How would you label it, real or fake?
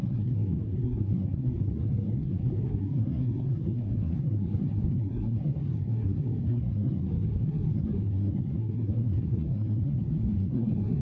fake